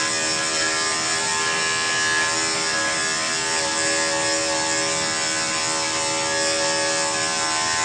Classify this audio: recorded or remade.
recorded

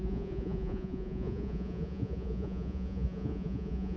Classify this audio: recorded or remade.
remade